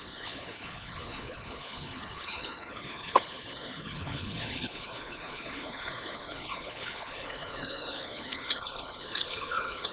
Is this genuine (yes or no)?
no